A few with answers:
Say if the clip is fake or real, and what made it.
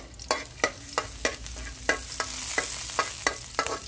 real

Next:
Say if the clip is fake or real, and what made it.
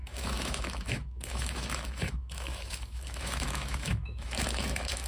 fake, autoencoder, DAC-VAE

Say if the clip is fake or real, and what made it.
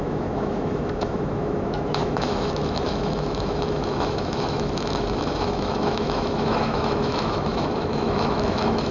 fake, autoencoder, DAC-VAE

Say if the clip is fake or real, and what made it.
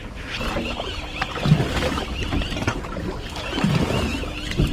real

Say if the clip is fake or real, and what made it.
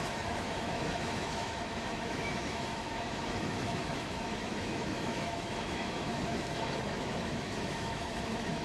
fake, autoencoder, DAC-VAE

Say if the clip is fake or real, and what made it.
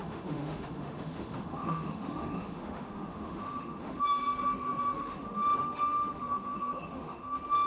fake, autoencoder, DAC-VAE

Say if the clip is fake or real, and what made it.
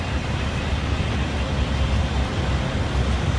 real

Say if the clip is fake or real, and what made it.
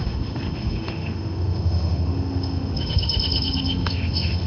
fake, autoencoder, DAC-VAE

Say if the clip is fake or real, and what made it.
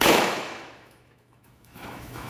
fake, autoencoder, DAC-VAE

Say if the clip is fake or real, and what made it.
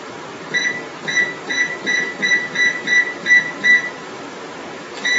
real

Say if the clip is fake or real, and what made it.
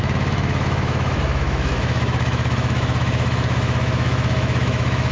fake, autoencoder, DAC-VAE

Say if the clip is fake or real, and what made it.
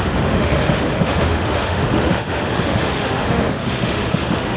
fake, autoencoder, DAC-VAE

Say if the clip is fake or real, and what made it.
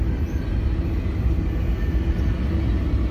real